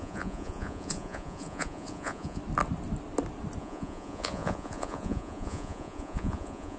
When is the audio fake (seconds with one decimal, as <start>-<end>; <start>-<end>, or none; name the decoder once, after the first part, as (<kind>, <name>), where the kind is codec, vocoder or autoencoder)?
0.0-2.4 (vocoder, Vocos); 3.6-6.8